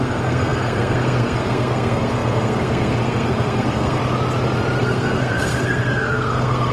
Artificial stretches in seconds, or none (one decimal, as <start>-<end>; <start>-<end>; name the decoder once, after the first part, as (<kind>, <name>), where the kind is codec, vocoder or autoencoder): 0.0-4.0 (codec, SNAC); 4.8-6.7